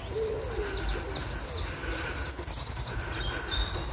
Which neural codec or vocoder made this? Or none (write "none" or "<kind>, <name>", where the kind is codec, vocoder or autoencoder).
none